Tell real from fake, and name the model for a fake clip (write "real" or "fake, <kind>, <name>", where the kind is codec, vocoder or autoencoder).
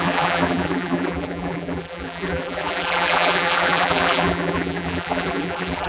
fake, vocoder, BigVGAN v2